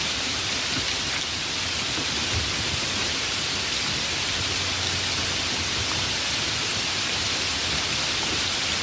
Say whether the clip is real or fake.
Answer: real